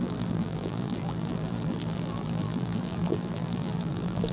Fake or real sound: fake